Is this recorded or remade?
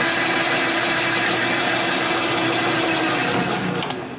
recorded